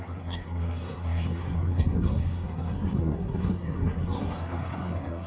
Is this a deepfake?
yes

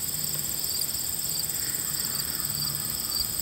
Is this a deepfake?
no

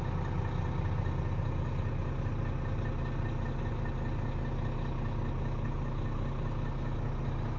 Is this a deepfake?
no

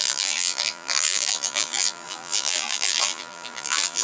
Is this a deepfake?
yes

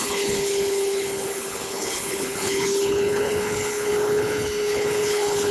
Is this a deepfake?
yes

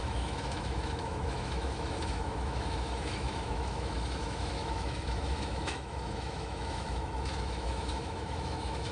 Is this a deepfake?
yes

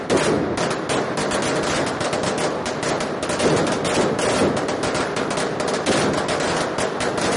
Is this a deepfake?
no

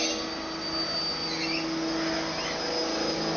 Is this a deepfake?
no